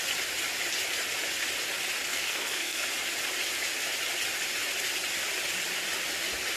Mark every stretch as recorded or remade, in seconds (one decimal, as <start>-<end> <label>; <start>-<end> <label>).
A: 0.0-2.1 recorded; 2.1-2.9 remade; 2.9-6.6 recorded